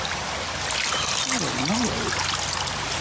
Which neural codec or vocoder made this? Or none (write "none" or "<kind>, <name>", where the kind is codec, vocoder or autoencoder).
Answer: none